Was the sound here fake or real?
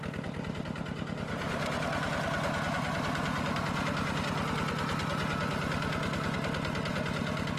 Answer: real